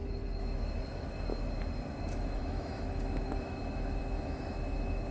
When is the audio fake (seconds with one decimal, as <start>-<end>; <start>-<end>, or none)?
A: 0.0-1.3; 2.0-5.1

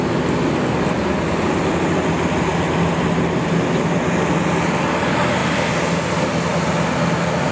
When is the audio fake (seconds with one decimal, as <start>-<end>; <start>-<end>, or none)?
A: none

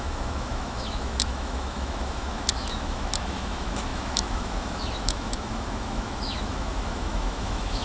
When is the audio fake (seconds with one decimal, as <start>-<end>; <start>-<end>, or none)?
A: 0.0-7.8

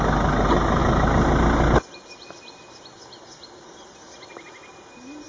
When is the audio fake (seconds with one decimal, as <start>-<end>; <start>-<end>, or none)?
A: none